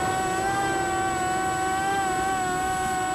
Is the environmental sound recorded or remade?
recorded